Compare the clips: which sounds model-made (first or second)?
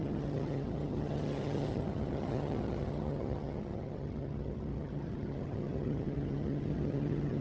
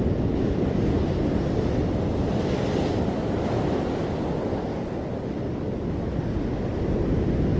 first